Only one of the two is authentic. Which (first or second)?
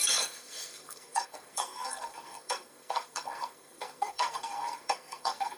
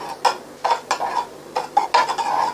second